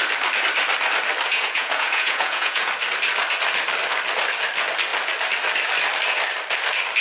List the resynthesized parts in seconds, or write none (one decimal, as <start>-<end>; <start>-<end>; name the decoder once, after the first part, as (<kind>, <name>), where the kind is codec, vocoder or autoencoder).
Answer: 1.3-2.7 (vocoder, Vocos)